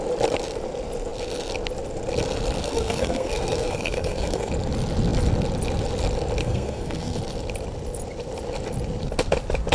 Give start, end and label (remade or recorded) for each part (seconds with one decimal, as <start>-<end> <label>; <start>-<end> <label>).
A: 0.0-2.6 recorded; 2.6-4.5 remade; 4.5-6.4 recorded; 6.4-7.2 remade; 7.2-9.7 recorded